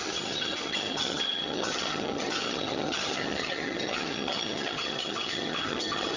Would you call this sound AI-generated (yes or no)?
yes